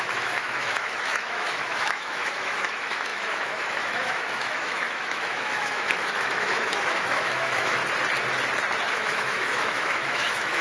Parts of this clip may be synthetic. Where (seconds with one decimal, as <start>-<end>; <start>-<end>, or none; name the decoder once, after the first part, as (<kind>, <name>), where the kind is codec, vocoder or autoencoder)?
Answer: 0.0-7.8 (autoencoder, DAC-VAE); 8.9-10.6